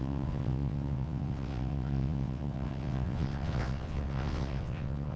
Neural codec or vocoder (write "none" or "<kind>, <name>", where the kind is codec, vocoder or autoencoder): vocoder, WaveNeXt